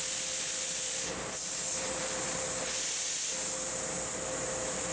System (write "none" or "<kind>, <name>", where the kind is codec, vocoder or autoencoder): none